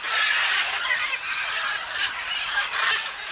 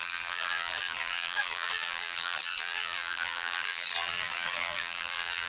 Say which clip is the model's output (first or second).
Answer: second